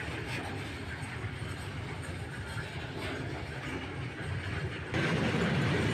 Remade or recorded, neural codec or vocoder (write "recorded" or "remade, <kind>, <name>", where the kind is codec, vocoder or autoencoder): recorded